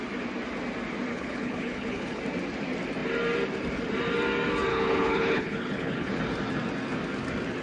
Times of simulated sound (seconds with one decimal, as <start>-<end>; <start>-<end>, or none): 1.1-2.2; 4.7-6.1